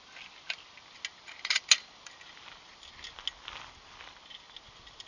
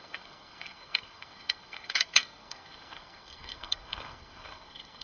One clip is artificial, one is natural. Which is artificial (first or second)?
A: second